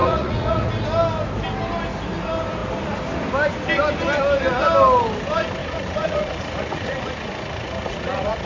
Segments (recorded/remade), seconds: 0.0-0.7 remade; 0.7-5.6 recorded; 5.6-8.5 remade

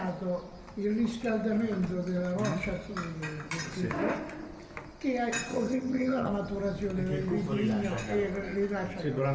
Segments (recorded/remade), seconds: 0.0-5.5 recorded; 5.5-6.3 remade; 6.3-9.3 recorded